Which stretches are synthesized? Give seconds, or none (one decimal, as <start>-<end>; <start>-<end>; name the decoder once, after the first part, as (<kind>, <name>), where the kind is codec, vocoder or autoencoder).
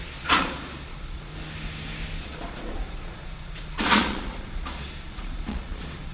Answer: 0.0-1.3 (vocoder, Vocos); 2.2-6.1